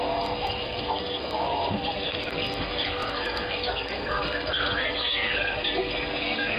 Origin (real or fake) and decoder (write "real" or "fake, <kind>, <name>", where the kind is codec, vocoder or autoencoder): fake, codec, SNAC